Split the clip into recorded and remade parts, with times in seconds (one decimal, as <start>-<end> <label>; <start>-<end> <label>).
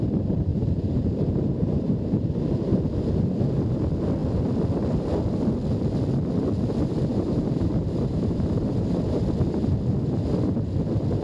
0.0-0.5 recorded; 0.5-2.3 remade; 2.3-7.1 recorded; 7.1-9.2 remade; 9.2-11.2 recorded